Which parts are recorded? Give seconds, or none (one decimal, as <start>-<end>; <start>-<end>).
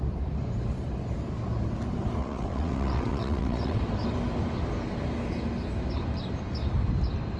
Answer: 0.0-2.2; 3.8-7.4